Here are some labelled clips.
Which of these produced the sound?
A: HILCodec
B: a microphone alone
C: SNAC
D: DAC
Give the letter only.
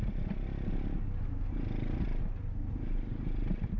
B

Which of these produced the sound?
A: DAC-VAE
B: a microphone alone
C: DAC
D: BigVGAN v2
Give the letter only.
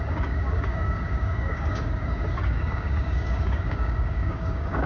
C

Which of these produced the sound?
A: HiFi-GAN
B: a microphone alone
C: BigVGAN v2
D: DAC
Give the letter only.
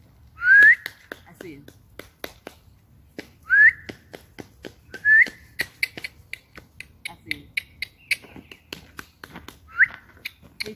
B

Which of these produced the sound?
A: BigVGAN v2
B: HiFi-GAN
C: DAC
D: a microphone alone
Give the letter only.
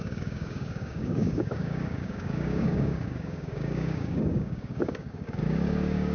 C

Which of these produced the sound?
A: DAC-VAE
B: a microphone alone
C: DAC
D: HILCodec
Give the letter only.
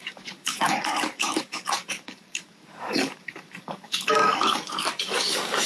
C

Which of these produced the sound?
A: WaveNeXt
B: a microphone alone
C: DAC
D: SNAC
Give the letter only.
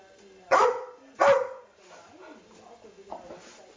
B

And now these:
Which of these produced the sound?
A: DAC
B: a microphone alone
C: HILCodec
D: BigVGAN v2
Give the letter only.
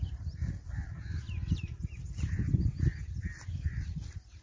B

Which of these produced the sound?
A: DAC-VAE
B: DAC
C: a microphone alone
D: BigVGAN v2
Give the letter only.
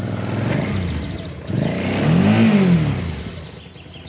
C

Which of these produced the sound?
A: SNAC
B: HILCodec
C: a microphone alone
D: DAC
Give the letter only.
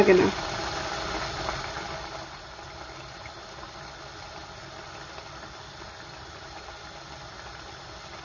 C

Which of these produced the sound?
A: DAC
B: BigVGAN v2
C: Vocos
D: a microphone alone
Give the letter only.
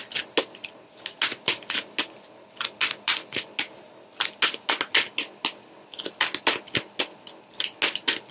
D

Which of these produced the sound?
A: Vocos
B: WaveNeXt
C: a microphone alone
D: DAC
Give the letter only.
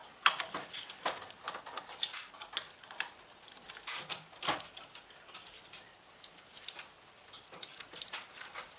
C